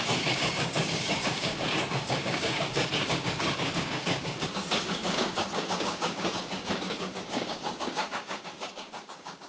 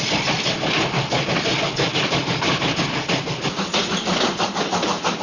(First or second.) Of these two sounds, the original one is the second